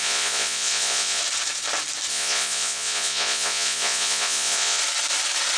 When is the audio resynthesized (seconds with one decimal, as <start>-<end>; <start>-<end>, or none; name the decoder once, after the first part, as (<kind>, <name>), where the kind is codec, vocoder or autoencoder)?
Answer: 0.0-1.2 (vocoder, Vocos); 2.1-4.8